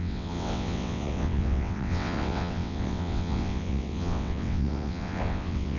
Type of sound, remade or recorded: remade